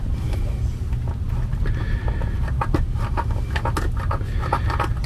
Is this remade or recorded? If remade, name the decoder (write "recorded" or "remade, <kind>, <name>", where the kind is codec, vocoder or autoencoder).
recorded